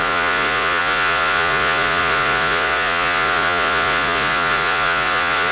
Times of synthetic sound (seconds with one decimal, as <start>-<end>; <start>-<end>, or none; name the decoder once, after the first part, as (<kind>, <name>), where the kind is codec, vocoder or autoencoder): 0.0-5.5 (vocoder, Vocos)